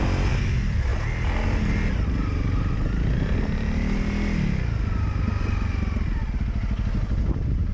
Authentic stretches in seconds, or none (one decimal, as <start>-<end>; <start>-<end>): 0.0-7.7